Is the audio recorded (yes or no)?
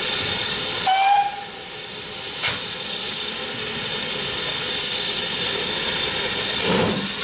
yes